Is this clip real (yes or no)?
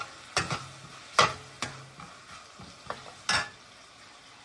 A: yes